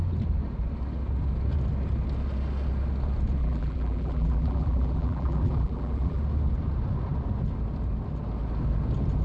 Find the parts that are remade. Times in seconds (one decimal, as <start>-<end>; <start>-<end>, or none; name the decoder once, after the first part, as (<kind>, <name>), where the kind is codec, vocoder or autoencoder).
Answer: 3.4-6.2 (vocoder, BigVGAN v2)